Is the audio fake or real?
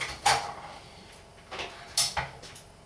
real